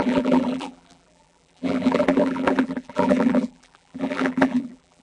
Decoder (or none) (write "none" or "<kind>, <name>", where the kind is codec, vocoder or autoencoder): vocoder, BigVGAN v2